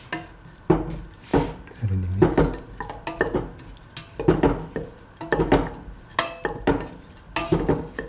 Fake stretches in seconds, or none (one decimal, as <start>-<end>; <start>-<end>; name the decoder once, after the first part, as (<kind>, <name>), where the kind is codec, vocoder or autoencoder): 7.4-8.1 (codec, DAC)